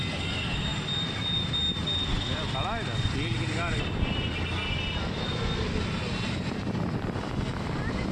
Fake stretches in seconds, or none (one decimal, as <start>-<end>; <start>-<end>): none